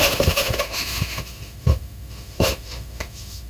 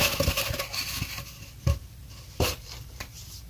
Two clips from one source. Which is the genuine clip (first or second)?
second